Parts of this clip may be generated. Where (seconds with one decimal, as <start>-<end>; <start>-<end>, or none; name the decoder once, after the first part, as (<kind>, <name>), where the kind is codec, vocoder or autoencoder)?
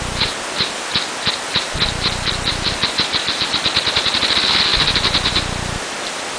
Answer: none